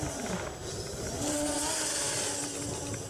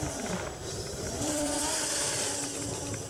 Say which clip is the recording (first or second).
first